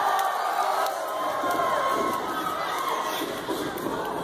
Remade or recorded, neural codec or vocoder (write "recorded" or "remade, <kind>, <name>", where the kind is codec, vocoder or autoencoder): recorded